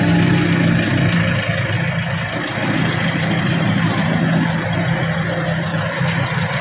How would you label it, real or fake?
real